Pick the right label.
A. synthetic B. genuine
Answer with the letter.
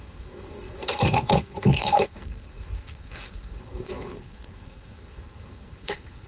A